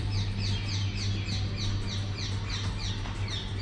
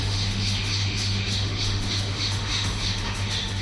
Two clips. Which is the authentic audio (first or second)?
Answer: first